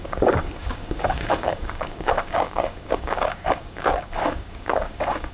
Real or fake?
fake